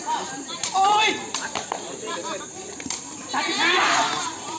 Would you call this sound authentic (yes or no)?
no